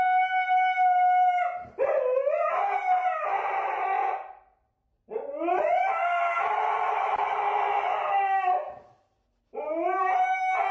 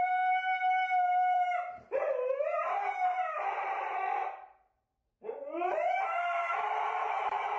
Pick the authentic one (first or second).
first